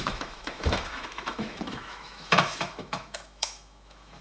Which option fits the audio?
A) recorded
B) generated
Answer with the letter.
B